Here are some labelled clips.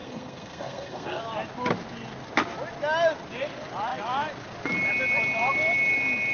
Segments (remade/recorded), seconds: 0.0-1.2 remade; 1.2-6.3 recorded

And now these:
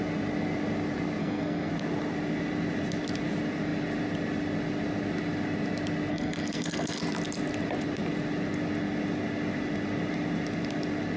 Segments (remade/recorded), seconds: 0.0-1.2 recorded; 1.2-1.7 remade; 1.7-6.1 recorded; 6.1-7.0 remade; 7.0-11.2 recorded

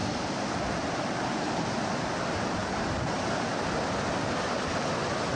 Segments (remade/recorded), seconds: 0.0-5.4 recorded

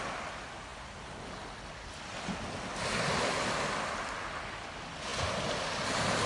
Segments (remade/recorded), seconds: 0.0-6.3 recorded

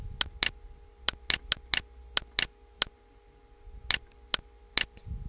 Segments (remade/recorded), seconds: 0.0-5.3 recorded

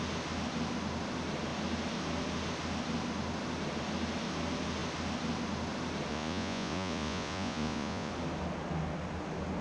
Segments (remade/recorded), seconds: 0.0-6.1 recorded; 6.1-8.1 remade; 8.1-9.6 recorded

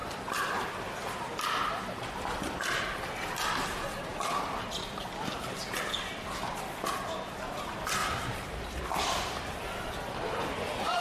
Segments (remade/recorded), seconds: 0.0-4.1 recorded; 4.1-5.6 remade; 5.6-8.0 recorded; 8.0-11.0 remade

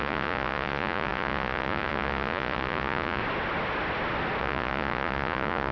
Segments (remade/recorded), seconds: 0.0-3.2 remade; 3.2-4.4 recorded; 4.4-5.7 remade